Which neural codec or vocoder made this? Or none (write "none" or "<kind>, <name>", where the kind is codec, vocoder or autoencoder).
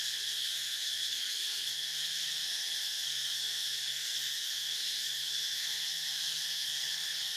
codec, SNAC